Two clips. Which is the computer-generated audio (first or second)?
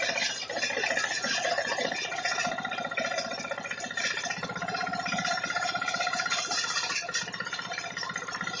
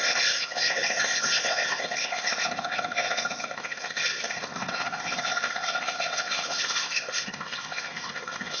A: second